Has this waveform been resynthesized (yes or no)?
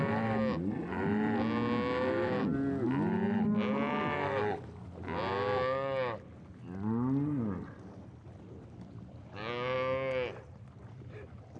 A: no